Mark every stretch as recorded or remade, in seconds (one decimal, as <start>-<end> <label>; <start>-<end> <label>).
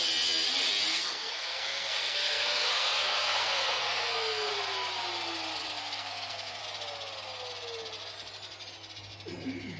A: 0.0-0.9 recorded; 0.9-4.5 remade; 4.5-5.6 recorded; 5.6-6.6 remade; 6.6-9.8 recorded